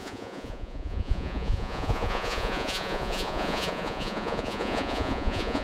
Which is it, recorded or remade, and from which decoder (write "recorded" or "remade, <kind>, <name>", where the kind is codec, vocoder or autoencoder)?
remade, vocoder, Vocos